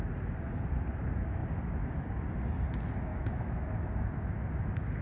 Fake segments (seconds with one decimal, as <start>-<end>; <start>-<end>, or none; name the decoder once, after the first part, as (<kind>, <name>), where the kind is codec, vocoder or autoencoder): 3.1-3.7 (autoencoder, DAC-VAE)